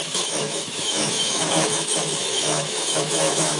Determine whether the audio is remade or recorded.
remade